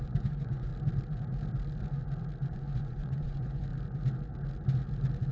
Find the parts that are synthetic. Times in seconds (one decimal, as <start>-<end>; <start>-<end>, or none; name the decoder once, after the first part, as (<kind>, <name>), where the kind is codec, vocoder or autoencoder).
0.0-0.7 (vocoder, Vocos); 2.5-3.7